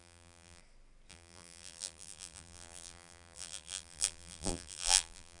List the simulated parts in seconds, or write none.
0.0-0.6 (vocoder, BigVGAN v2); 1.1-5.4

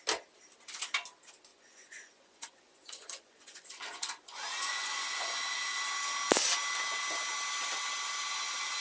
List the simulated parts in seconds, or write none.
1.5-5.8 (vocoder, Vocos)